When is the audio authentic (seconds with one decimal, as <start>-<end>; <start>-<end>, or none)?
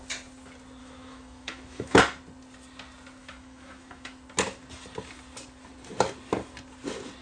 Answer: 0.0-0.8; 2.0-3.2; 4.1-7.2